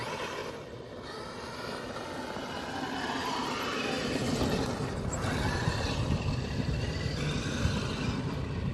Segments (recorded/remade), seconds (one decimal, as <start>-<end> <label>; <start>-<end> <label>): 0.0-8.7 recorded